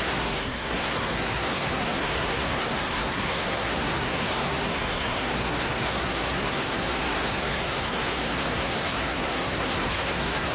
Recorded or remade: remade